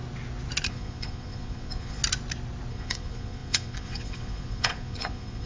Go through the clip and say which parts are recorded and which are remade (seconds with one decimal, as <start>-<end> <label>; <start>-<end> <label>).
0.0-0.7 recorded; 0.7-2.0 remade; 2.0-2.7 recorded; 2.7-5.5 remade